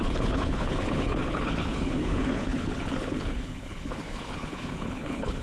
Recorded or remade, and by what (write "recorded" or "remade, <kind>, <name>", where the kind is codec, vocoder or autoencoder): remade, codec, HILCodec